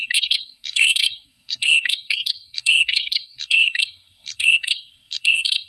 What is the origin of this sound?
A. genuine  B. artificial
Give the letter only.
B